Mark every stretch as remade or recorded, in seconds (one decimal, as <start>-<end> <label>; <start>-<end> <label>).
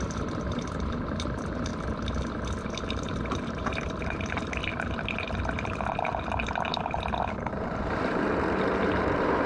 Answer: 0.0-1.7 remade; 1.7-2.6 recorded; 2.6-4.7 remade; 4.7-7.3 recorded; 7.3-9.5 remade